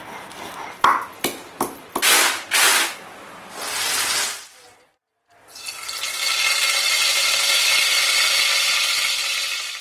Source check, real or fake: real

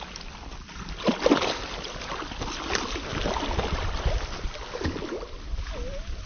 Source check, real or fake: real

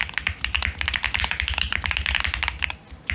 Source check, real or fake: real